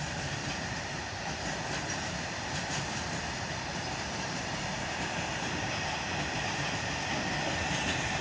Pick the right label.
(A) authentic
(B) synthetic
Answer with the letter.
B